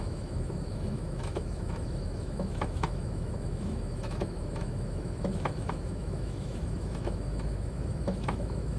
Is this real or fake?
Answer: fake